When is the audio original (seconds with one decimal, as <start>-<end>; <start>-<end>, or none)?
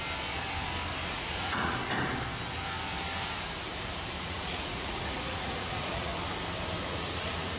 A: 0.0-1.1; 1.8-4.2; 6.1-6.8